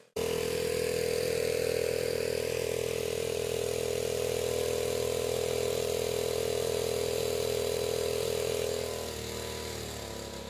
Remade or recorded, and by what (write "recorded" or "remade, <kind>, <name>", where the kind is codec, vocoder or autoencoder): recorded